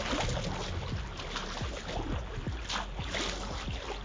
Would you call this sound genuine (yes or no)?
yes